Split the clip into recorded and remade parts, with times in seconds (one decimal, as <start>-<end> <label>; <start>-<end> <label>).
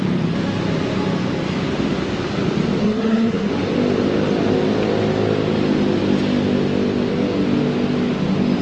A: 0.0-2.8 recorded; 2.8-3.5 remade; 3.5-8.6 recorded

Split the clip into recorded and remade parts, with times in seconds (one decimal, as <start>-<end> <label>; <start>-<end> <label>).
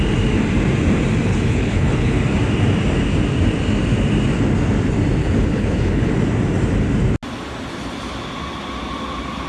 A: 0.0-1.3 recorded; 1.3-2.2 remade; 2.2-5.2 recorded; 5.2-6.1 remade; 6.1-9.5 recorded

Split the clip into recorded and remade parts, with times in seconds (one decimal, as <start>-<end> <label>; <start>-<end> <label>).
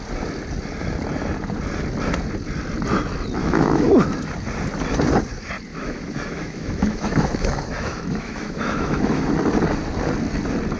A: 0.0-3.4 recorded; 3.4-3.9 remade; 3.9-5.7 recorded; 5.7-9.3 remade; 9.3-10.8 recorded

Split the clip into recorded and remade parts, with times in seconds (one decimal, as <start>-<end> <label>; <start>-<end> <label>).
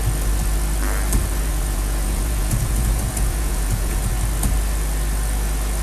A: 0.0-1.5 recorded; 1.5-4.1 remade; 4.1-5.8 recorded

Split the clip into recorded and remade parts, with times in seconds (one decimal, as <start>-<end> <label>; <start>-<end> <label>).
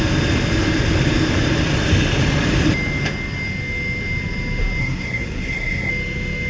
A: 0.0-4.8 recorded; 4.8-5.9 remade; 5.9-6.5 recorded